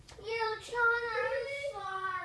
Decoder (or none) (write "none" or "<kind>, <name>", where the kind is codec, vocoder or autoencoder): vocoder, Vocos